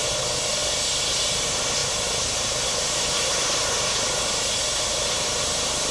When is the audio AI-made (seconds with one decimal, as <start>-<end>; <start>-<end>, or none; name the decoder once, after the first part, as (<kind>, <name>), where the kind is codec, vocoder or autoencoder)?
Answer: none